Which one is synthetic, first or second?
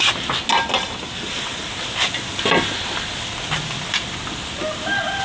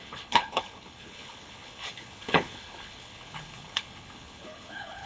second